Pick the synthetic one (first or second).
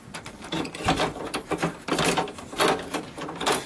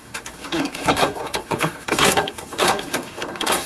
second